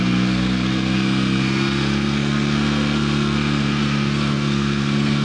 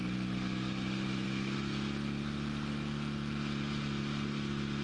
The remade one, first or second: first